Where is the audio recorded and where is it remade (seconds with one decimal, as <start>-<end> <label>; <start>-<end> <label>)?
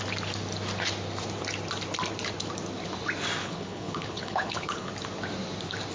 0.0-3.4 recorded; 3.4-4.9 remade; 4.9-5.9 recorded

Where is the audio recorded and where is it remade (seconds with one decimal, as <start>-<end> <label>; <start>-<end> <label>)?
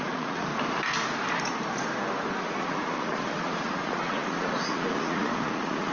0.0-0.5 remade; 0.5-2.4 recorded; 2.4-5.9 remade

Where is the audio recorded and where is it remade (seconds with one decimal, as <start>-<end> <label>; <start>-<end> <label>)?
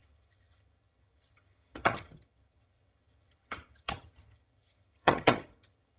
0.0-6.0 remade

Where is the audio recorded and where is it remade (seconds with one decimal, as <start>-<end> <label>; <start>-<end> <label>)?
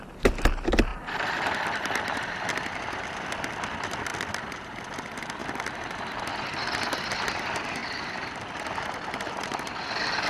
0.0-0.9 recorded; 0.9-2.3 remade; 2.3-4.1 recorded; 4.1-4.7 remade; 4.7-5.4 recorded; 5.4-6.1 remade; 6.1-10.3 recorded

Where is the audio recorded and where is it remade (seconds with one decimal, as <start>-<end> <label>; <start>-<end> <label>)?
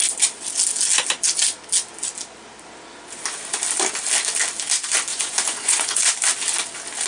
0.0-5.1 recorded; 5.1-6.0 remade; 6.0-7.1 recorded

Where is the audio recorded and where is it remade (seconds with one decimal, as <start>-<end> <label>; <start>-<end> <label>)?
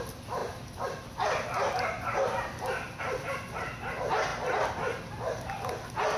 0.0-6.2 recorded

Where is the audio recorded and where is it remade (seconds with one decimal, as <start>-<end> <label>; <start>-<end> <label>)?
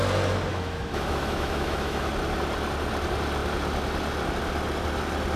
0.0-0.5 recorded; 0.5-2.1 remade; 2.1-5.4 recorded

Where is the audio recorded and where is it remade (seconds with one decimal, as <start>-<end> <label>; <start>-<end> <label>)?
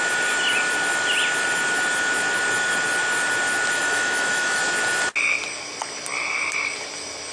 0.0-3.8 recorded; 3.8-4.6 remade; 4.6-7.3 recorded